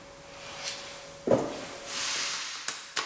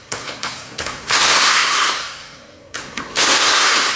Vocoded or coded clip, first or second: second